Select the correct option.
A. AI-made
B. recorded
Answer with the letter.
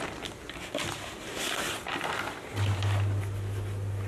B